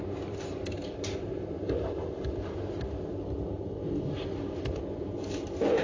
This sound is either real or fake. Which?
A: real